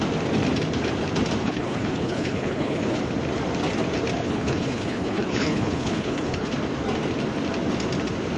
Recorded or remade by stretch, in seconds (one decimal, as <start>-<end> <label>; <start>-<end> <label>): 0.0-1.4 recorded; 1.4-3.0 remade; 3.0-4.2 recorded; 4.2-6.5 remade; 6.5-8.4 recorded